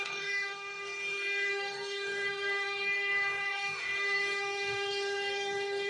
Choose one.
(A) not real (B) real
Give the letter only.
A